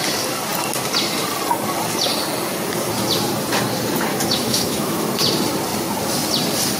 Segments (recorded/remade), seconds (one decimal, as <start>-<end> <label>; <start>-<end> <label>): 0.0-4.1 recorded; 4.1-5.1 remade; 5.1-6.8 recorded